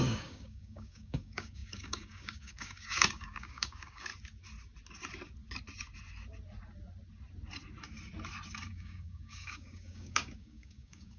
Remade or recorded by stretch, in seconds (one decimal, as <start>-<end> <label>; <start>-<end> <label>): 0.0-4.1 remade; 4.1-8.7 recorded; 8.7-11.2 remade